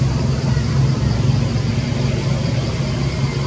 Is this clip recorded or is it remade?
recorded